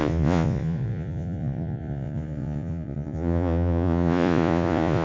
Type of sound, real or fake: fake